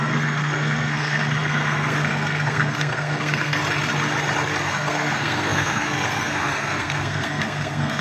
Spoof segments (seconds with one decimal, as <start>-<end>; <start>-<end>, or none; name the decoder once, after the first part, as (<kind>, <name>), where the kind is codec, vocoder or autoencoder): 0.0-3.6 (codec, SNAC); 4.6-8.0